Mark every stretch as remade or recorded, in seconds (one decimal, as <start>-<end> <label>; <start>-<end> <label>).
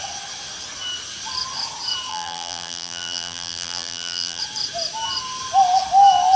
0.0-2.1 recorded; 2.1-4.4 remade; 4.4-6.4 recorded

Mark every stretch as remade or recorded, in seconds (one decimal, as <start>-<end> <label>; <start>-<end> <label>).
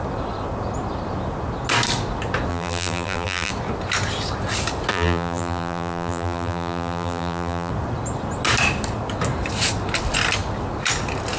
0.0-2.5 recorded; 2.5-3.5 remade; 3.5-4.9 recorded; 4.9-7.7 remade; 7.7-11.4 recorded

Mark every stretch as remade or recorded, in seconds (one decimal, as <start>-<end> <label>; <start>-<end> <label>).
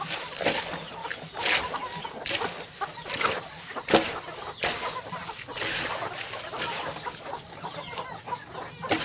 0.0-9.0 recorded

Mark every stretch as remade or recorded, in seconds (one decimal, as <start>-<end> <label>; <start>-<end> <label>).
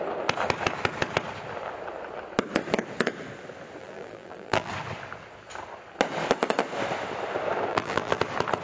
0.0-3.8 recorded; 3.8-4.7 remade; 4.7-7.7 recorded; 7.7-8.2 remade; 8.2-8.6 recorded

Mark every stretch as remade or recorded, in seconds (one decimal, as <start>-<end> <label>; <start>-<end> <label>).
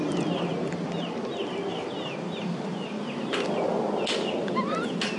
0.0-0.5 recorded; 0.5-1.3 remade; 1.3-5.2 recorded